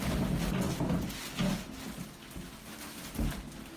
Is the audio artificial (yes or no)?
no